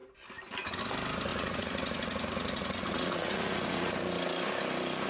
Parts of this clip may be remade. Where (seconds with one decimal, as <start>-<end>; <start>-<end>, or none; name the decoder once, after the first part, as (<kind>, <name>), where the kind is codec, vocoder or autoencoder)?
1.3-3.9 (vocoder, Vocos)